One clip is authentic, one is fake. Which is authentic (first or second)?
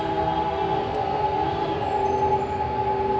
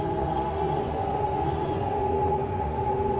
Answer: first